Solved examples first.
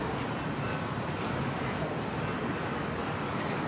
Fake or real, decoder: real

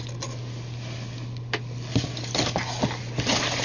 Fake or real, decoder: real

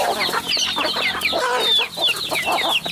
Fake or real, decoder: real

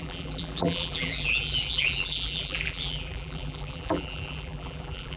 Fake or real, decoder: fake, vocoder, BigVGAN v2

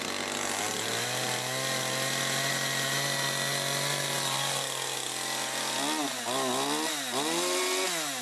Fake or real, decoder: real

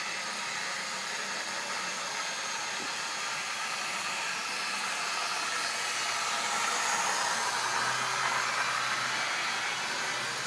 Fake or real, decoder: real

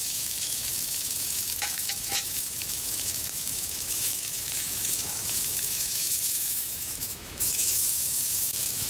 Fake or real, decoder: fake, autoencoder, DAC-VAE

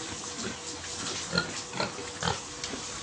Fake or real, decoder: real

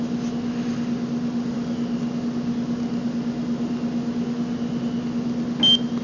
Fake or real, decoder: real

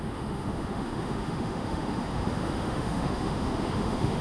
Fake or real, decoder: fake, autoencoder, DAC-VAE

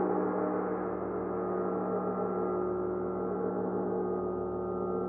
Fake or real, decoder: real